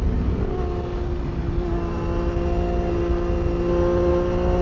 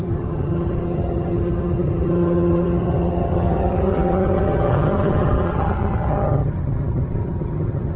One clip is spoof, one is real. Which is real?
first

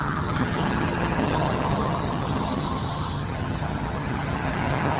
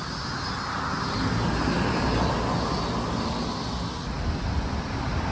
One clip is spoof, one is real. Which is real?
second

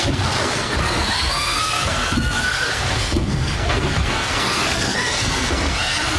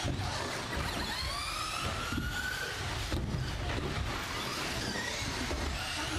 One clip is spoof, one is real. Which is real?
second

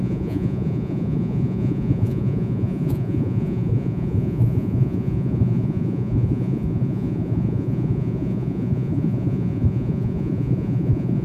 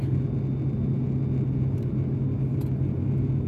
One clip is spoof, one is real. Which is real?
second